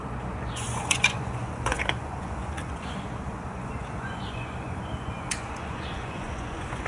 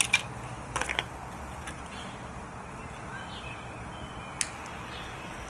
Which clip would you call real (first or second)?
second